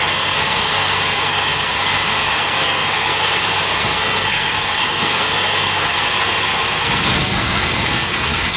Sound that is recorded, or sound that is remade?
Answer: remade